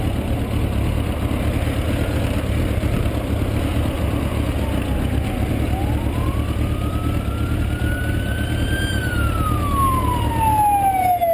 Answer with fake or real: real